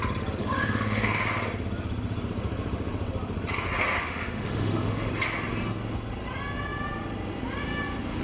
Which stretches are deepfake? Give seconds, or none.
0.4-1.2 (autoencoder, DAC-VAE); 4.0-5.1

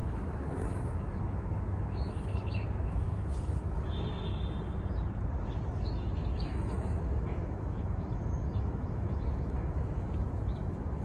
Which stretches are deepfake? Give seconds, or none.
0.0-4.3 (autoencoder, DAC-VAE); 5.9-11.0